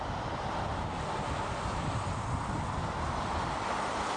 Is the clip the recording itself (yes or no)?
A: yes